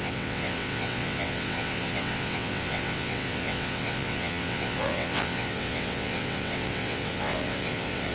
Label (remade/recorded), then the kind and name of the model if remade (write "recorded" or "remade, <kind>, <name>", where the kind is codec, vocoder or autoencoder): remade, vocoder, WaveNeXt